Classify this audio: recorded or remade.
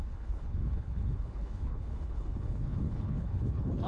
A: remade